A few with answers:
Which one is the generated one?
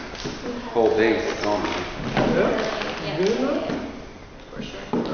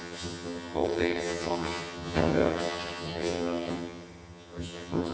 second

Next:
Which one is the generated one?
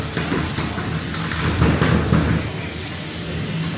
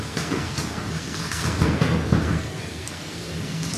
second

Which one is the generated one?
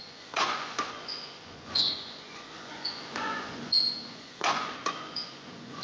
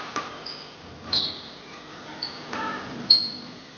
first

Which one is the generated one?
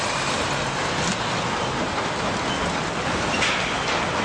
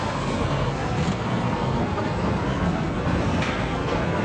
second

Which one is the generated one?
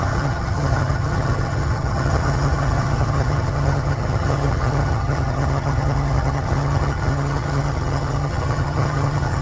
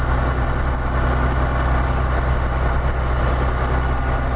first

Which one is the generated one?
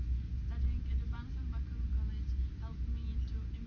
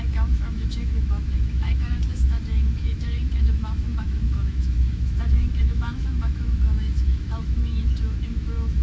second